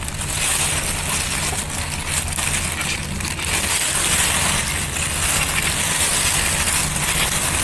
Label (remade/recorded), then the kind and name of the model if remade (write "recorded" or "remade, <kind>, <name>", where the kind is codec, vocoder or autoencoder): recorded